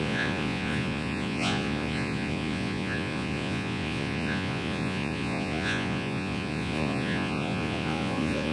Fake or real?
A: fake